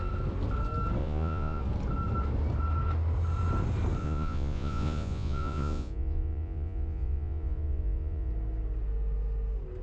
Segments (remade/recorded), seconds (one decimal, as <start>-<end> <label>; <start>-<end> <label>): 0.0-1.0 recorded; 1.0-1.6 remade; 1.6-4.0 recorded; 4.0-8.3 remade; 8.3-9.8 recorded